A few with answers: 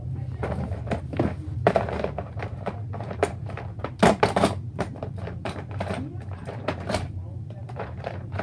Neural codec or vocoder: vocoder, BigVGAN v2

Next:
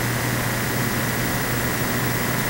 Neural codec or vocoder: none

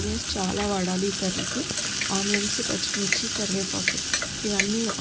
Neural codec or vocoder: none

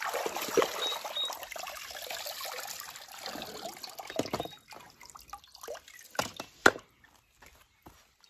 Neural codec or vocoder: none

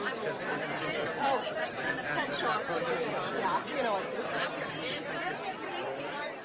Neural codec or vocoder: none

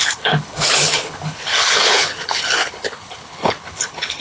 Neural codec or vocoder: codec, HILCodec